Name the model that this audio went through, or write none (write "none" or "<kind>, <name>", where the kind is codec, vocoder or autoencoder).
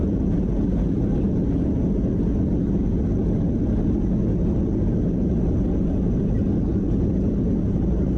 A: none